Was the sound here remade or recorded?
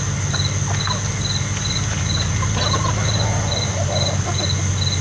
recorded